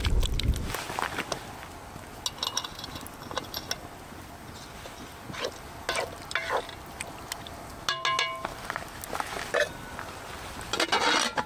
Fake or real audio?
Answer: real